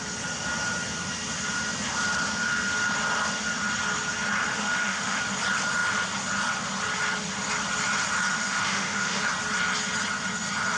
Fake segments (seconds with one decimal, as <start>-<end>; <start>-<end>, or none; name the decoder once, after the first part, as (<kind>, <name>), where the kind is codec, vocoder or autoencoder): 4.5-5.2 (autoencoder, DAC-VAE); 8.3-9.2

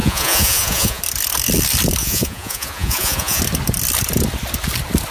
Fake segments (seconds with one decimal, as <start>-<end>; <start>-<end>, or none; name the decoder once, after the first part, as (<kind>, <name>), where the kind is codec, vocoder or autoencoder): 0.0-1.0 (vocoder, Vocos); 2.0-3.4

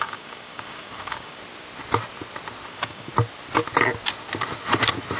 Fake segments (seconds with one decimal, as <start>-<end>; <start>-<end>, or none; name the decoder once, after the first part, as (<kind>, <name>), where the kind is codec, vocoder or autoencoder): 0.0-1.4 (codec, DAC); 2.7-3.1

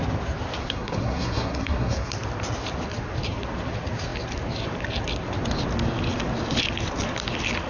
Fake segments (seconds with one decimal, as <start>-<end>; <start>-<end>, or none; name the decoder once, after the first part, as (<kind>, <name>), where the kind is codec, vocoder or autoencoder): 0.6-2.1 (codec, SNAC)

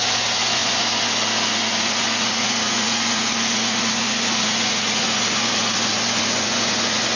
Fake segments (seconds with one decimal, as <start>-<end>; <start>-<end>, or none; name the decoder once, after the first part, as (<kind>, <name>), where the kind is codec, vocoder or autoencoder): 0.0-7.2 (vocoder, Vocos)

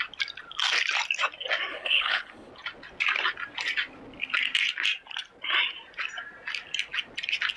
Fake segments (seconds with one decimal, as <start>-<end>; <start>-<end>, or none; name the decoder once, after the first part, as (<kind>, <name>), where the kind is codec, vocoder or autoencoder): 1.7-2.5 (codec, HILCodec)